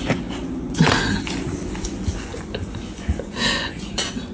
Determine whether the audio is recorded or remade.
remade